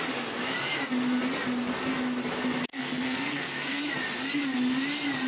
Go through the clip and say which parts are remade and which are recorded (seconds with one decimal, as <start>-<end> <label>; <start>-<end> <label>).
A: 0.0-2.6 recorded; 2.6-3.8 remade; 3.8-5.3 recorded